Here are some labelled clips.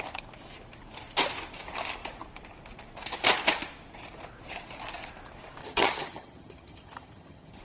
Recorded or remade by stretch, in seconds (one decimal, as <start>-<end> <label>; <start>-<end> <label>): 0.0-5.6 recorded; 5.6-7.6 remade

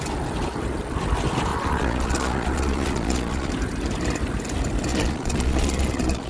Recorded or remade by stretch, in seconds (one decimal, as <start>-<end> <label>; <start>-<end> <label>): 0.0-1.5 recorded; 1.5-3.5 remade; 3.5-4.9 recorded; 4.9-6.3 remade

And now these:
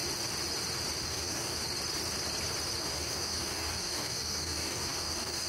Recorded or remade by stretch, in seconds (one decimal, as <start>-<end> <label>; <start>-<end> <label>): 0.0-1.0 recorded; 1.0-1.6 remade; 1.6-2.8 recorded; 2.8-5.5 remade

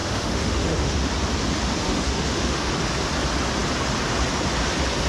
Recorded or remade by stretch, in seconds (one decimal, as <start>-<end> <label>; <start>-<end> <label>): 0.0-1.1 remade; 1.1-1.8 recorded; 1.8-2.7 remade; 2.7-5.1 recorded

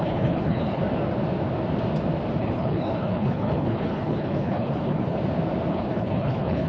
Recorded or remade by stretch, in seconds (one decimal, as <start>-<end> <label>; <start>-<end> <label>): 0.0-0.8 remade; 0.8-2.4 recorded; 2.4-5.2 remade; 5.2-5.7 recorded; 5.7-6.7 remade

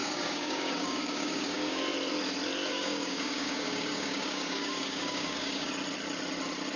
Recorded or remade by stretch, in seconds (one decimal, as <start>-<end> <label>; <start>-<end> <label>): 0.0-1.8 remade; 1.8-2.7 recorded; 2.7-5.7 remade; 5.7-6.8 recorded